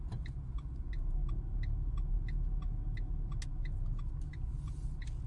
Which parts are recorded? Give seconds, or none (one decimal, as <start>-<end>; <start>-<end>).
0.0-5.3